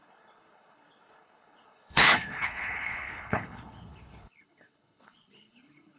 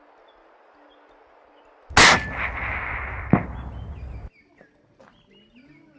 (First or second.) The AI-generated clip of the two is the first